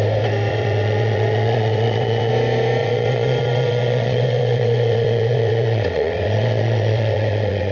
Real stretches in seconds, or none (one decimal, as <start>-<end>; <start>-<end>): 0.0-0.5; 2.3-2.8